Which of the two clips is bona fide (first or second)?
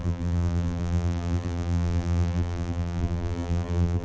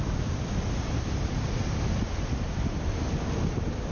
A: second